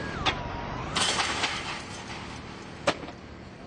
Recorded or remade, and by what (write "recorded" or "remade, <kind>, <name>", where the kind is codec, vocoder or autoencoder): recorded